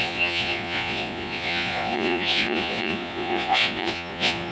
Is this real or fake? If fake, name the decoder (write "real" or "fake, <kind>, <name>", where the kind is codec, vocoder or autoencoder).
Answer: fake, vocoder, Vocos